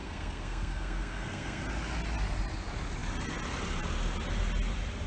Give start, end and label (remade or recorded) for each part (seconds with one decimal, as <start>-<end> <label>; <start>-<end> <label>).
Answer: 0.0-1.6 remade; 1.6-5.1 recorded